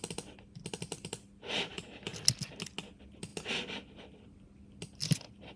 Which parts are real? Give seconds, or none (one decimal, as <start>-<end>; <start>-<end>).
0.0-5.6